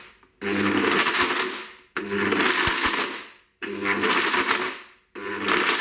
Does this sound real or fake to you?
real